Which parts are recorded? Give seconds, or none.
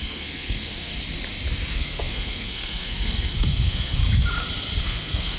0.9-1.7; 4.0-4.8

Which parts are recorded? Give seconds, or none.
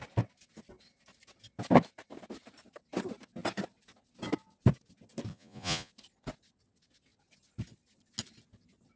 0.0-5.3; 5.9-9.0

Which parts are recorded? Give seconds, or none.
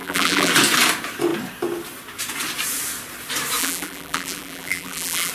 0.5-3.6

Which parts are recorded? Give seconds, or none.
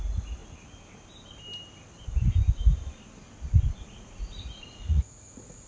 0.4-3.8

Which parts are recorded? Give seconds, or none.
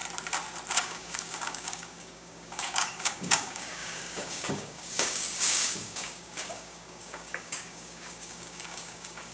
0.0-0.7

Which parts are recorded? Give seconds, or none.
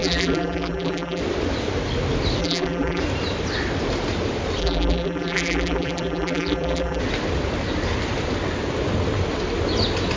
1.2-2.4; 3.0-4.6; 7.0-10.2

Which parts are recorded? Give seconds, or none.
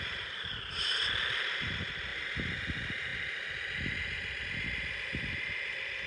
0.0-6.1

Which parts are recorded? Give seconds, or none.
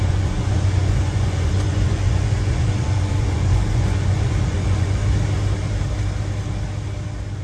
5.0-7.4